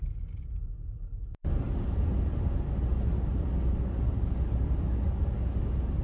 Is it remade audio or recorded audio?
recorded